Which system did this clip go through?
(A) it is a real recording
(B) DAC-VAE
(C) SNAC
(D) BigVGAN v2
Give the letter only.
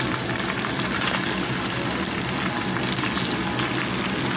A